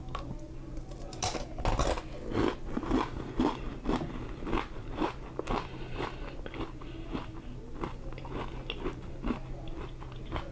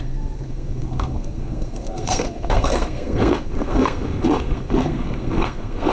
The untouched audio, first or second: first